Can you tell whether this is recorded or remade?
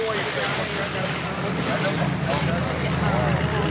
recorded